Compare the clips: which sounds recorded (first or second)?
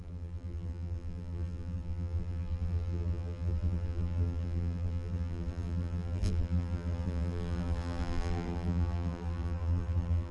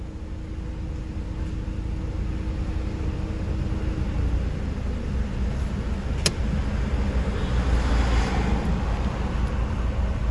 second